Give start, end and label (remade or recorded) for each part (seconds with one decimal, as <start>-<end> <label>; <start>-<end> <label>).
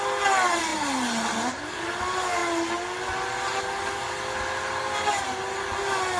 0.0-6.2 recorded